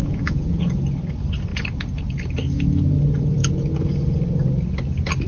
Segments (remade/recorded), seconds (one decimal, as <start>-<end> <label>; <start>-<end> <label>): 0.0-0.6 remade; 0.6-5.3 recorded